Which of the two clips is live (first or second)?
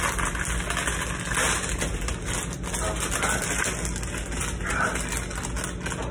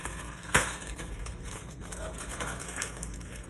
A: first